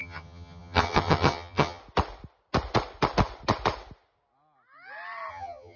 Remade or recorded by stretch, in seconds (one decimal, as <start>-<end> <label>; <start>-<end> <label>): 0.0-1.8 remade; 1.8-5.3 recorded; 5.3-5.8 remade